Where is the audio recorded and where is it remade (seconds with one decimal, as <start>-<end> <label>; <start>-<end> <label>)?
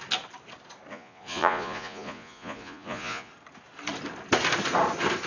0.0-0.9 recorded; 0.9-3.3 remade; 3.3-5.3 recorded